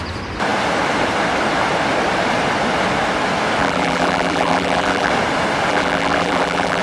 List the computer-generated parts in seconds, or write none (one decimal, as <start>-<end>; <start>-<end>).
3.6-5.1; 5.7-6.8